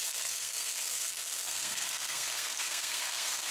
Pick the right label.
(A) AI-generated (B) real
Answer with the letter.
A